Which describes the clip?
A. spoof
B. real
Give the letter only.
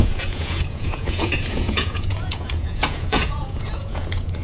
A